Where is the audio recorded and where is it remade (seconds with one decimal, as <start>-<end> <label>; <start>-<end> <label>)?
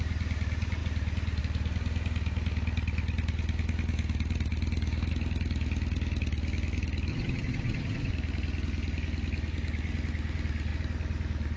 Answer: 0.0-7.1 recorded; 7.1-8.1 remade; 8.1-11.6 recorded